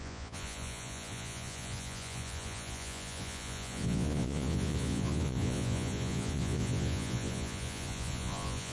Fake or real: fake